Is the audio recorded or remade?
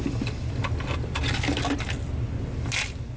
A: recorded